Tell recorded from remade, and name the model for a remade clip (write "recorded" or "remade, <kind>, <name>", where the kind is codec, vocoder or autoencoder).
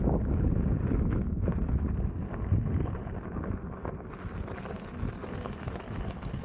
recorded